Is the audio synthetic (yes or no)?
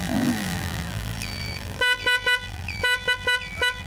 yes